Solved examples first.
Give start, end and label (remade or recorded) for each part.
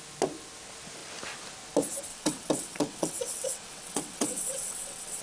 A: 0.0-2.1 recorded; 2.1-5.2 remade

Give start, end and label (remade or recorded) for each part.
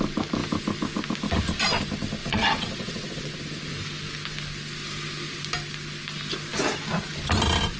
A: 0.0-2.2 recorded; 2.2-3.3 remade; 3.3-7.8 recorded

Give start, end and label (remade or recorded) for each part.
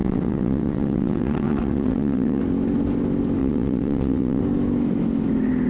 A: 0.0-2.4 remade; 2.4-3.4 recorded; 3.4-4.4 remade; 4.4-5.7 recorded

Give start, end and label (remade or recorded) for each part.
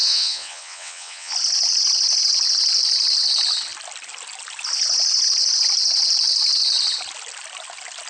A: 0.0-1.3 remade; 1.3-8.1 recorded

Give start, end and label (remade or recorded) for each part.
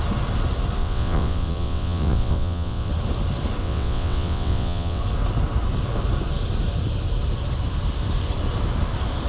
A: 0.0-0.8 recorded; 0.8-2.9 remade; 2.9-3.6 recorded; 3.6-5.0 remade; 5.0-9.3 recorded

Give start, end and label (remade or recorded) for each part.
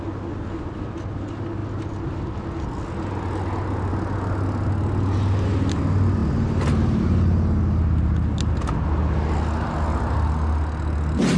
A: 0.0-11.4 recorded